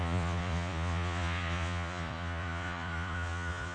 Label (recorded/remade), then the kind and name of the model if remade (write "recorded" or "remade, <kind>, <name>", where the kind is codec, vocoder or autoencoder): remade, vocoder, Vocos